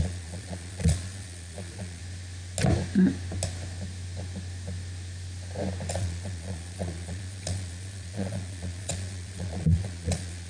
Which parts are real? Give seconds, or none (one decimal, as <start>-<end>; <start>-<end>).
2.0-5.9